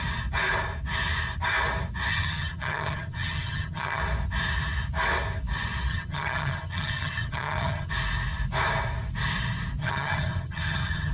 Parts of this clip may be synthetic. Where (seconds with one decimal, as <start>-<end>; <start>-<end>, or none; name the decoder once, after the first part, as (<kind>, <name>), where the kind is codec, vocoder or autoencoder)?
2.1-4.0 (vocoder, HiFi-GAN); 5.9-7.9; 9.8-11.1